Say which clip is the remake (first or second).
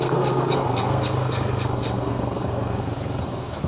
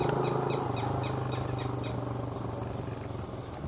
first